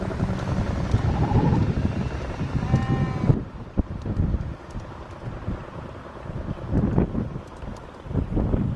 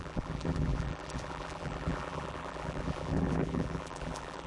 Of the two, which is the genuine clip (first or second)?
first